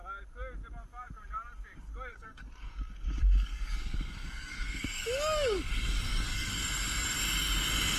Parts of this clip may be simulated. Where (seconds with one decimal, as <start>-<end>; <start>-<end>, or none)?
2.1-6.5